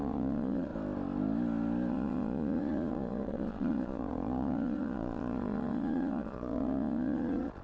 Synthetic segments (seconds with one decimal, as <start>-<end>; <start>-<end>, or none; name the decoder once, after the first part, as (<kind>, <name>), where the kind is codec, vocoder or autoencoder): 0.0-0.7 (vocoder, Vocos); 1.9-7.6